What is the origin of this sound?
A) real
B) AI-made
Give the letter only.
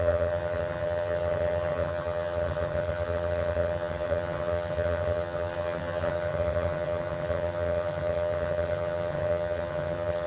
B